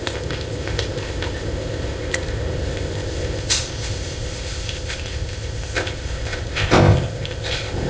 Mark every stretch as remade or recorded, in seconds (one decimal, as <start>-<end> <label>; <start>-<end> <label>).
0.0-7.9 remade

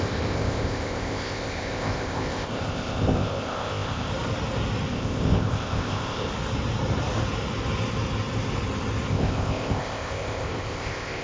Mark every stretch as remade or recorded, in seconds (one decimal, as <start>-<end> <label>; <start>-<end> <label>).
0.0-4.1 remade; 4.1-4.9 recorded; 4.9-6.3 remade; 6.3-9.1 recorded; 9.1-11.2 remade

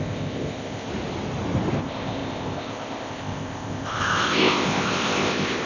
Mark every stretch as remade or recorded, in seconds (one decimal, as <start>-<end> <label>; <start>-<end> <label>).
0.0-0.9 remade; 0.9-1.8 recorded; 1.8-5.7 remade

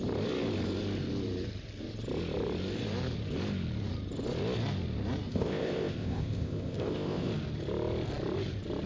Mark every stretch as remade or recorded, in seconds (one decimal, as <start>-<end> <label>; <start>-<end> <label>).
0.0-5.3 recorded; 5.3-7.3 remade; 7.3-8.9 recorded

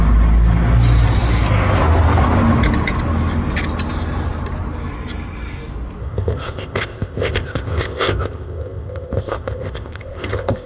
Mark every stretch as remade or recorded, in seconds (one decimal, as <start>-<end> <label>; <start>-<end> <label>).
0.0-6.0 recorded; 6.0-10.7 remade

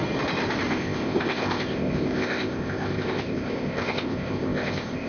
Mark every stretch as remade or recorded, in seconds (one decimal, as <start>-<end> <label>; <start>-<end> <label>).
0.0-0.7 recorded; 0.7-5.1 remade

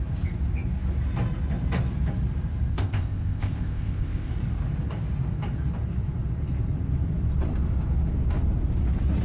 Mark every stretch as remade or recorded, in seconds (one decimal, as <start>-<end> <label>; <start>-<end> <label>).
0.0-2.7 recorded; 2.7-4.3 remade; 4.3-9.2 recorded

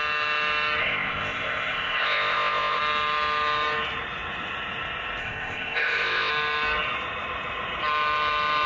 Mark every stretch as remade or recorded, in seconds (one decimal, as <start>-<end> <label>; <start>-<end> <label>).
0.0-0.8 recorded; 0.8-2.8 remade; 2.8-5.2 recorded; 5.2-6.3 remade; 6.3-8.7 recorded